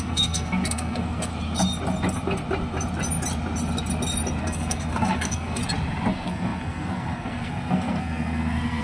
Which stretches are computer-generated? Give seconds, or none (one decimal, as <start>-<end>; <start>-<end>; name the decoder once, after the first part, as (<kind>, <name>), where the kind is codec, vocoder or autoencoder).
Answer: 0.0-1.3 (codec, SNAC); 4.4-5.6; 6.1-8.8